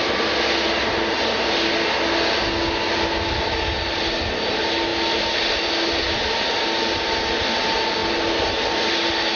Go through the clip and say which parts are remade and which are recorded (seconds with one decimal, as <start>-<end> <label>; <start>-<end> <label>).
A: 0.0-9.4 recorded